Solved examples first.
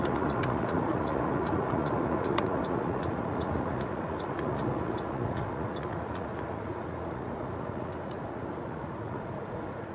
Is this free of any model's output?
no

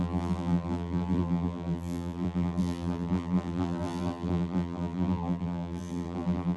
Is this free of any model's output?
no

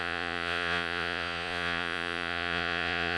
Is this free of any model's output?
no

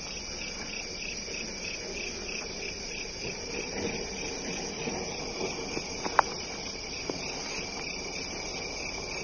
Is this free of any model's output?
yes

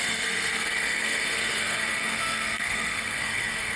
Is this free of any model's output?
no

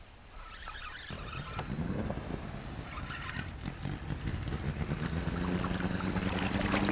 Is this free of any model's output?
yes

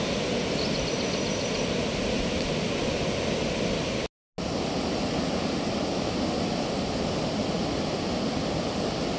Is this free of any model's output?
yes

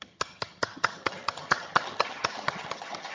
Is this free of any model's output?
no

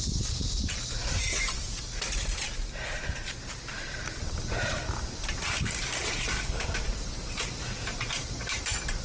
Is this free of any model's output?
no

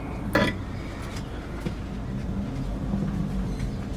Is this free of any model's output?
yes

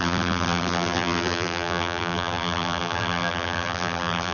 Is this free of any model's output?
no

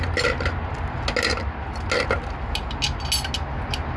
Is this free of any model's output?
yes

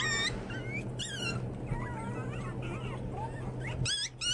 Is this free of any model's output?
yes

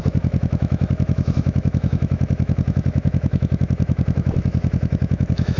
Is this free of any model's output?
no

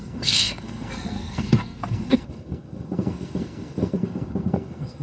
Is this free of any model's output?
no